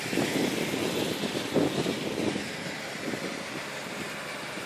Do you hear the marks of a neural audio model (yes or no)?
no